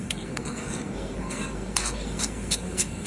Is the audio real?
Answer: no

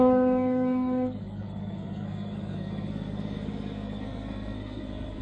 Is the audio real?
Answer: no